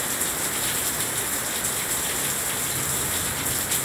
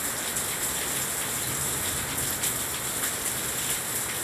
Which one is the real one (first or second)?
second